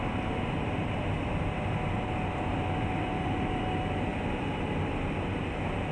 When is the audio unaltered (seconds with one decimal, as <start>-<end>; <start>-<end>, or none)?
0.0-2.5; 3.6-4.1; 5.0-5.9